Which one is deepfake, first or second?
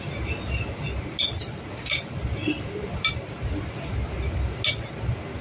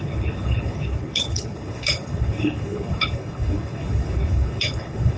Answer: second